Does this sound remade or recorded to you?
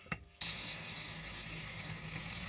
remade